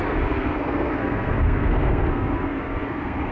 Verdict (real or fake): fake